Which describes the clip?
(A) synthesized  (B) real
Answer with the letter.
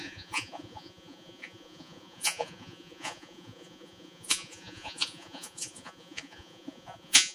A